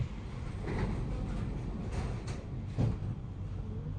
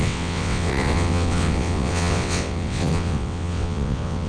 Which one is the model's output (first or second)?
second